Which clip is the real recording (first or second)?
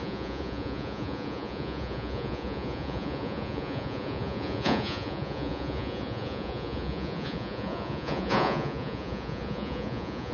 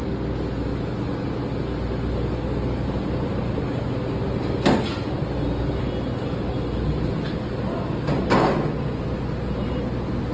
second